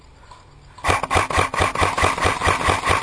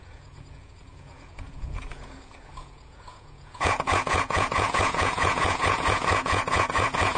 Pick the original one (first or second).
first